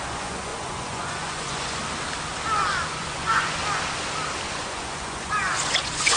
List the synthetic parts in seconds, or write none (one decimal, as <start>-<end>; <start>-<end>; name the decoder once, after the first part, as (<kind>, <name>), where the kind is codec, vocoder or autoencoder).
0.0-1.8 (vocoder, Vocos); 2.9-3.6; 4.5-6.2